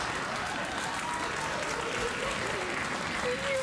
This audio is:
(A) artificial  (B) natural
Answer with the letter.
B